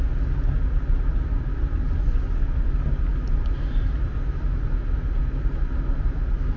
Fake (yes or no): no